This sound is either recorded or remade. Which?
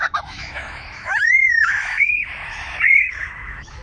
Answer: remade